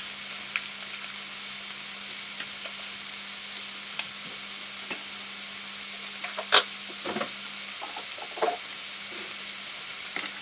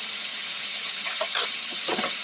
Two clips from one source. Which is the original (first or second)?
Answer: first